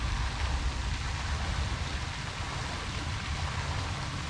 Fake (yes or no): no